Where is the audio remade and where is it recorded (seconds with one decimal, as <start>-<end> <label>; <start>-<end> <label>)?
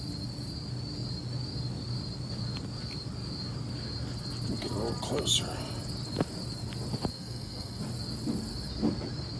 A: 0.0-7.1 recorded; 7.1-7.8 remade; 7.8-9.4 recorded